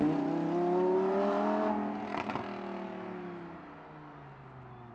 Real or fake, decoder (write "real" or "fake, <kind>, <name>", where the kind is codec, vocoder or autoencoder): real